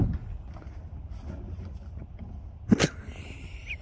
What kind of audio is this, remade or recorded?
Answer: recorded